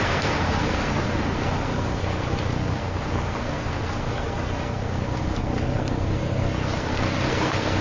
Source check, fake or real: fake